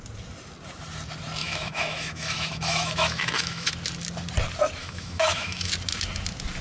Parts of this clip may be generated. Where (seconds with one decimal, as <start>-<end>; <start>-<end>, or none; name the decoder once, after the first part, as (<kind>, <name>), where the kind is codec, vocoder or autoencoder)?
1.4-3.7 (autoencoder, DAC-VAE); 4.8-5.7

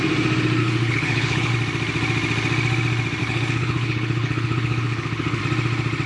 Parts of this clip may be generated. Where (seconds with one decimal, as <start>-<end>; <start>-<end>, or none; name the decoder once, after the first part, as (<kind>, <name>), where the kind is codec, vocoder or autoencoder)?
0.6-1.5 (codec, HILCodec); 3.2-5.4

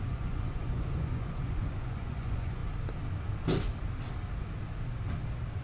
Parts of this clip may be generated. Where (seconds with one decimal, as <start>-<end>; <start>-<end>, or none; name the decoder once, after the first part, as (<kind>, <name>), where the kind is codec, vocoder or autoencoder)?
0.0-2.6 (vocoder, Vocos)

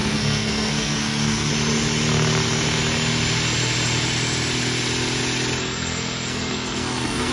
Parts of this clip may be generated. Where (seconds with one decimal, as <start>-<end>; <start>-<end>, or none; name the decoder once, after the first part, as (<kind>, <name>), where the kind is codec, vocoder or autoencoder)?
0.0-1.5 (codec, SNAC); 5.6-7.3

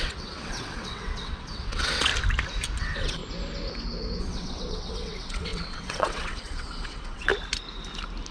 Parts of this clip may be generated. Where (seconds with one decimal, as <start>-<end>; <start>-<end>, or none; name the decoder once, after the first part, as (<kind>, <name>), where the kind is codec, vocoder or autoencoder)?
0.0-2.1 (vocoder, WaveNeXt); 2.8-3.2; 4.2-7.3